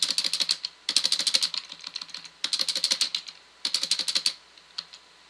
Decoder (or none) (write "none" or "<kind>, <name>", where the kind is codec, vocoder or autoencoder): none